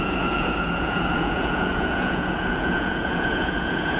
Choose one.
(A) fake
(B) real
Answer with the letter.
A